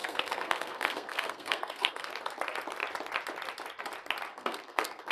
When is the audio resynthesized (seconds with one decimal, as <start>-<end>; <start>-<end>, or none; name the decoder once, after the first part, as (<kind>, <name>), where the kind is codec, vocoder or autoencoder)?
0.0-2.1 (codec, SNAC); 4.3-5.1